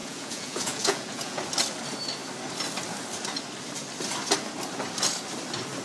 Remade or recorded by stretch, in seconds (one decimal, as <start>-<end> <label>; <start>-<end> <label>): 0.0-1.4 remade; 1.4-5.8 recorded